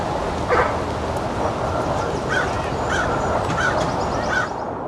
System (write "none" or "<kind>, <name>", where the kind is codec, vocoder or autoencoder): none